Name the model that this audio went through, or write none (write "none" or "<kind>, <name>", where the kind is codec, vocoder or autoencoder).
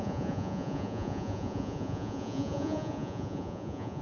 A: vocoder, Vocos